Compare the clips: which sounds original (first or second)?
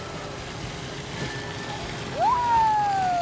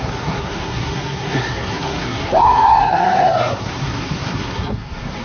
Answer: first